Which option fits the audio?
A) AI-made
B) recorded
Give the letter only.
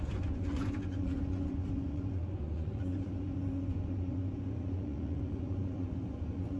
A